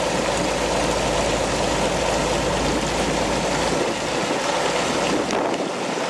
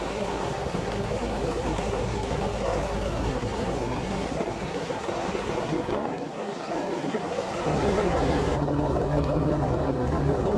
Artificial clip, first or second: second